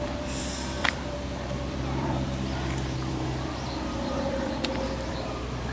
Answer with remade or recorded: remade